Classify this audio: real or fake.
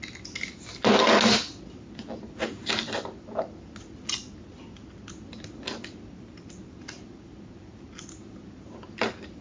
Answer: real